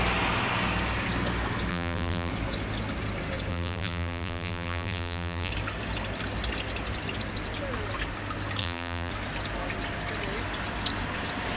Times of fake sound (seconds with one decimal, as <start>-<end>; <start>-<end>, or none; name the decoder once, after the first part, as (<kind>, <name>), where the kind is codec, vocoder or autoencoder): 1.7-2.3 (vocoder, BigVGAN v2); 3.5-5.5; 8.6-9.1